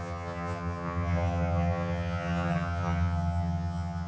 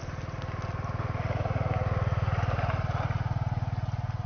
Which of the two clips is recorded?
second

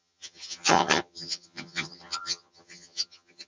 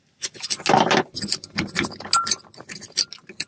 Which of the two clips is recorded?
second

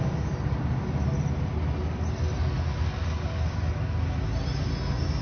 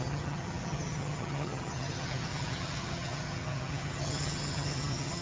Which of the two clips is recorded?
first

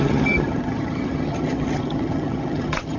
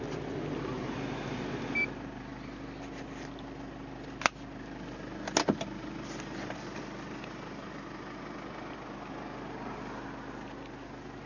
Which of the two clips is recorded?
second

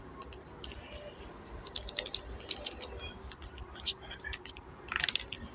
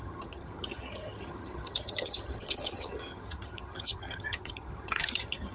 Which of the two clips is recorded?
first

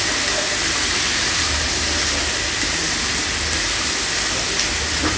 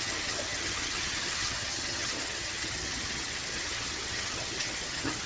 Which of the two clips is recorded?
first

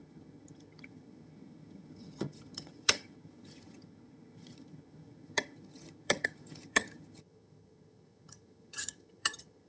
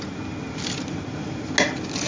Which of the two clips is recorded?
second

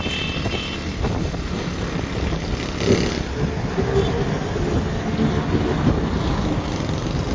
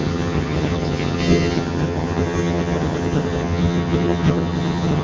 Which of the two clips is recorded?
first